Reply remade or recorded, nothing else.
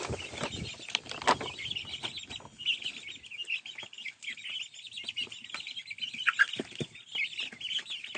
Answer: recorded